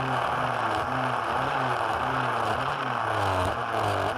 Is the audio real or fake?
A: real